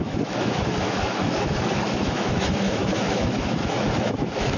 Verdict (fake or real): fake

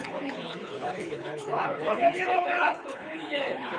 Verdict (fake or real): fake